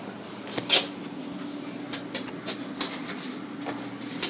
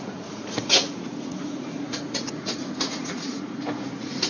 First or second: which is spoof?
second